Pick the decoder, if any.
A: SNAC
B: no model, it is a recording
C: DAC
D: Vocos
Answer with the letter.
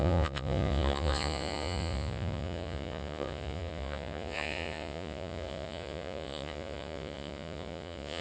D